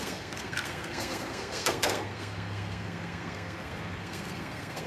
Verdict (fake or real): fake